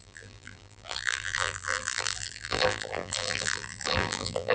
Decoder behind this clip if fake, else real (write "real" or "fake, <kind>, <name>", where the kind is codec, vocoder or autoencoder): fake, vocoder, BigVGAN v2